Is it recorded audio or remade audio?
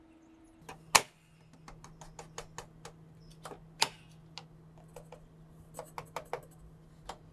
recorded